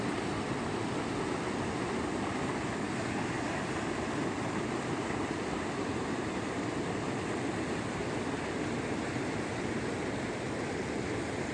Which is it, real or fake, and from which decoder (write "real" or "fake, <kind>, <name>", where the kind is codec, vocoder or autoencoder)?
real